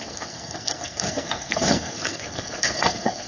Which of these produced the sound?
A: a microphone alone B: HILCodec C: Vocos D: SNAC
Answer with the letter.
D